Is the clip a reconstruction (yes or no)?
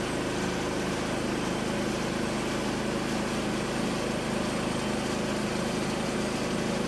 no